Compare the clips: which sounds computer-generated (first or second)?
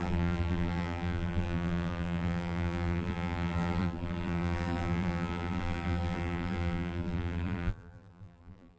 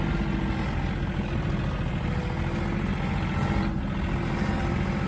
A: first